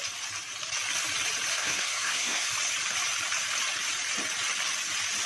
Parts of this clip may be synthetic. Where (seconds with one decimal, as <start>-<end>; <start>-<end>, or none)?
1.5-2.5